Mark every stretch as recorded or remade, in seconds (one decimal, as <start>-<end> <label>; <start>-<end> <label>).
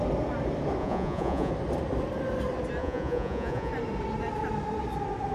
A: 0.0-0.8 recorded; 0.8-1.5 remade; 1.5-2.8 recorded; 2.8-3.7 remade; 3.7-5.3 recorded